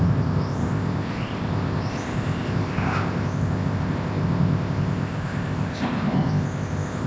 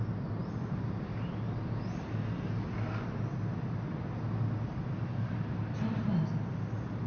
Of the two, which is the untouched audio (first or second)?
second